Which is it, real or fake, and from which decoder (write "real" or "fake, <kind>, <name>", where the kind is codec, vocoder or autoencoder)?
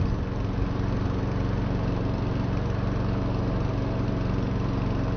fake, vocoder, BigVGAN v2